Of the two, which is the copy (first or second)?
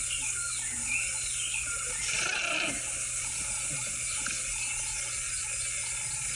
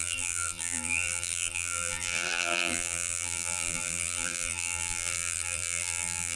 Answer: second